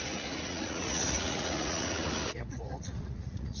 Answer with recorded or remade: remade